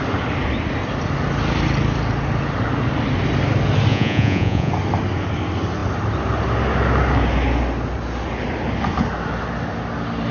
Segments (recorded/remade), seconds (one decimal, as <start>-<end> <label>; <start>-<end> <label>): 0.0-3.9 recorded; 3.9-4.7 remade; 4.7-10.3 recorded